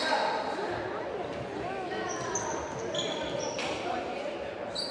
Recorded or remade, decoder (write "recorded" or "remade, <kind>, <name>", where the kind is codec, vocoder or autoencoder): recorded